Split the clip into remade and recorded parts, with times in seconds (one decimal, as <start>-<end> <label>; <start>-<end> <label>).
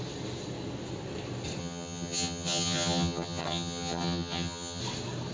0.0-1.6 recorded; 1.6-4.8 remade; 4.8-5.3 recorded